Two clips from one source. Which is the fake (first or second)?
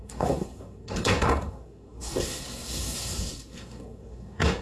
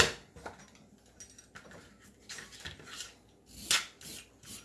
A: first